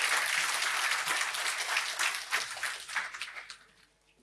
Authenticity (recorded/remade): recorded